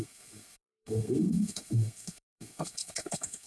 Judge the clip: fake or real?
fake